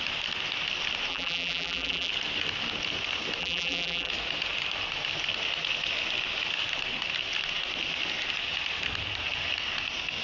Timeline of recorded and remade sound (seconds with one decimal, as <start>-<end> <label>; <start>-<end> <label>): 0.0-1.1 recorded; 1.1-2.1 remade; 2.1-3.4 recorded; 3.4-4.1 remade; 4.1-10.2 recorded